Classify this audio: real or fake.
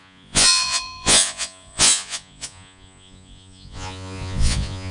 fake